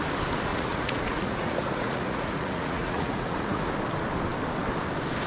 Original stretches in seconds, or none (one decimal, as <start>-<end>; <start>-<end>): 0.0-0.5; 3.7-5.3